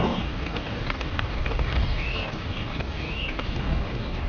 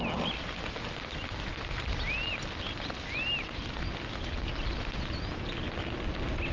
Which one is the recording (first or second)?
second